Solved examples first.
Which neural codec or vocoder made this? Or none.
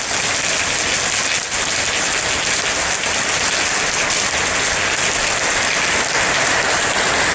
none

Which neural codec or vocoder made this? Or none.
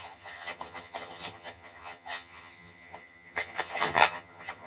vocoder, HiFi-GAN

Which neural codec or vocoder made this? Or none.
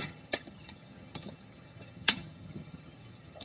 vocoder, HiFi-GAN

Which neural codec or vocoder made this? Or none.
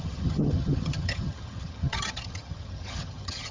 vocoder, HiFi-GAN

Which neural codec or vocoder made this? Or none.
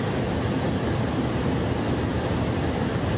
none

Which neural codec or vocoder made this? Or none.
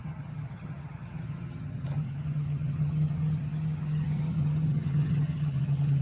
vocoder, HiFi-GAN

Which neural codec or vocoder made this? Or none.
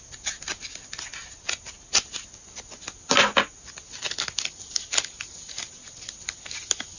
none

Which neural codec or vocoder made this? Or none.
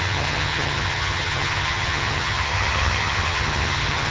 vocoder, HiFi-GAN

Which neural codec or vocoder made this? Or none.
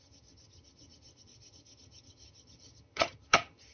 vocoder, HiFi-GAN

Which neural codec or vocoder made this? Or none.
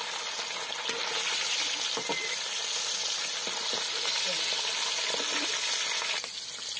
none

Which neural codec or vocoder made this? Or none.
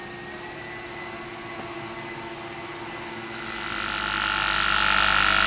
none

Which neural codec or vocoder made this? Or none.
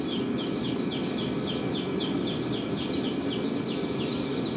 none